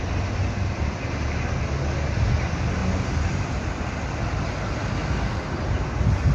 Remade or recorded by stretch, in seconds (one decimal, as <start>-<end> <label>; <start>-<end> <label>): 0.0-6.3 recorded